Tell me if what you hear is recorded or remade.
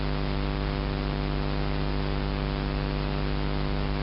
recorded